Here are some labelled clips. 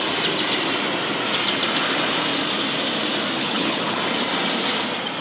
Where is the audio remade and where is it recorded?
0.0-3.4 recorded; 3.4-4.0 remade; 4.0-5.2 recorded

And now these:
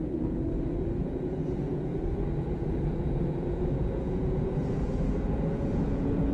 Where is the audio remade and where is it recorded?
0.0-6.3 remade